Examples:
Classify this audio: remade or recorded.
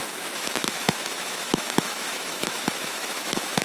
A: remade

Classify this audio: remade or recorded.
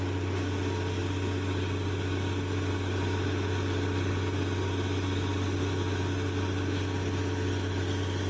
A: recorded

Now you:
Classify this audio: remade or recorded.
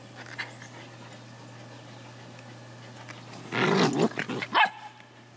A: recorded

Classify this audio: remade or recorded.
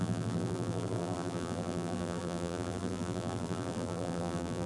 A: remade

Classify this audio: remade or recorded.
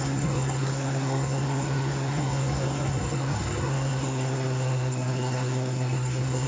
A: remade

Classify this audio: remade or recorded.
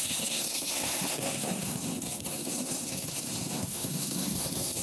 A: remade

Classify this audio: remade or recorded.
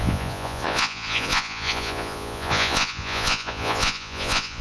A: remade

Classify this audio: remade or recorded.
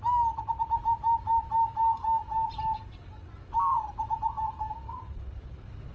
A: recorded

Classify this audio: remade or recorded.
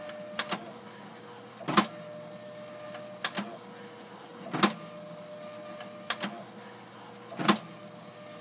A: recorded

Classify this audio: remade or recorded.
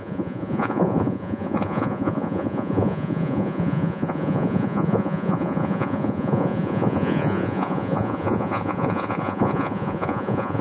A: remade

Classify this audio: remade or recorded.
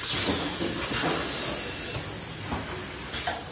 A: recorded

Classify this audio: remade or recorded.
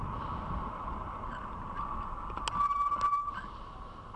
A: recorded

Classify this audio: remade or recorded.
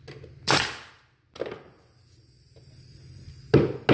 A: recorded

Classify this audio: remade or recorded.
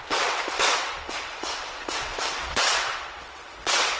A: remade